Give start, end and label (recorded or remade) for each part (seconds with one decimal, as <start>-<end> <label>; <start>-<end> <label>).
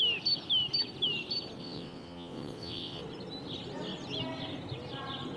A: 0.0-1.6 recorded; 1.6-3.0 remade; 3.0-5.4 recorded